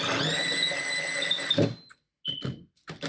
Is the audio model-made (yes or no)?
no